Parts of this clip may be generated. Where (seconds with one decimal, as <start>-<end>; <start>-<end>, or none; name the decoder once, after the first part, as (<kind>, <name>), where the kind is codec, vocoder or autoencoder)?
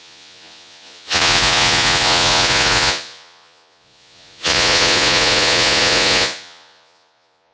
0.0-7.5 (vocoder, Vocos)